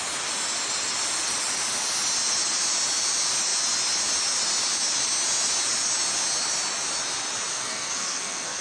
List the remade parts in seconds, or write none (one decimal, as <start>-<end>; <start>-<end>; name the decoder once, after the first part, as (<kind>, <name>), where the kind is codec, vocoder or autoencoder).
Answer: 7.5-8.6 (codec, SNAC)